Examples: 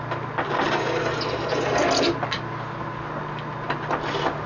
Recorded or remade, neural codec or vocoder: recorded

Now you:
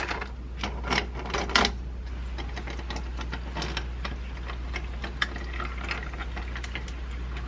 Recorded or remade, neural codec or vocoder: recorded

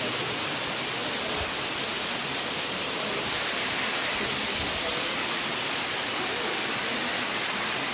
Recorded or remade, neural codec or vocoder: recorded